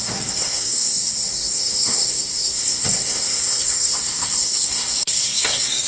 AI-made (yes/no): yes